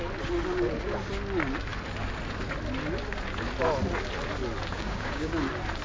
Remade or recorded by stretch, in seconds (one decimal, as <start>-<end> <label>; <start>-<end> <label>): 0.0-4.7 recorded; 4.7-5.3 remade; 5.3-5.8 recorded